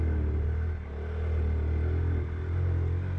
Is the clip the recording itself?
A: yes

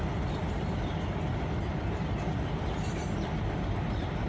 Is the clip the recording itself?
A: yes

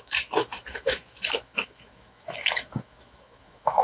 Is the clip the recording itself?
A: no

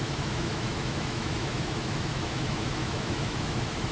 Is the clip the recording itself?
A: no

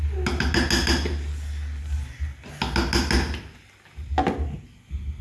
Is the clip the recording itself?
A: yes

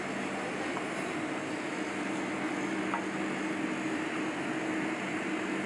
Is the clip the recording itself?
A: yes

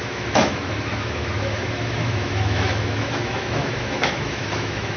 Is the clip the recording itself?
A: no